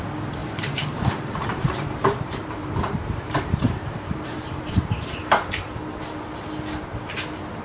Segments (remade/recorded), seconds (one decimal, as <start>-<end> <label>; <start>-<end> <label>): 0.0-0.4 recorded; 0.4-5.0 remade; 5.0-7.6 recorded